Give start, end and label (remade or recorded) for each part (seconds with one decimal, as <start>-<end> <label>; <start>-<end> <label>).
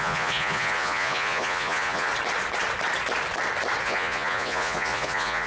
0.0-2.1 remade; 2.1-3.8 recorded; 3.8-5.5 remade